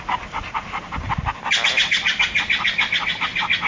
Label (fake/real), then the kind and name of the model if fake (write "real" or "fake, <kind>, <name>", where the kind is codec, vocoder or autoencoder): real